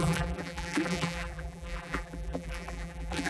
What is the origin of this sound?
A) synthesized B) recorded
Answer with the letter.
A